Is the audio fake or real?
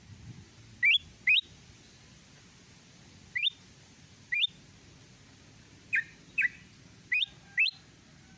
real